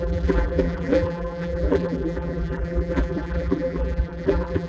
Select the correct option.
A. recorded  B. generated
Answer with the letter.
B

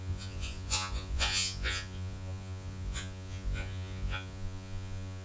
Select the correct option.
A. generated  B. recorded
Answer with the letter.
A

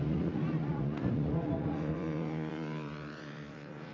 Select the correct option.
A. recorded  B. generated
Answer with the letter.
B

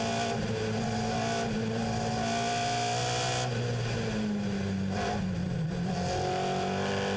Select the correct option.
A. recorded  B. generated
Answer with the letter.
A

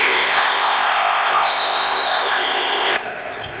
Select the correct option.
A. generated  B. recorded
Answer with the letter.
A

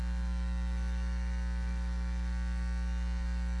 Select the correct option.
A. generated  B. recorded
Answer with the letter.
A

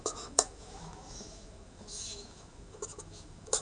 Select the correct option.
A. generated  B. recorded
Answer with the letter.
A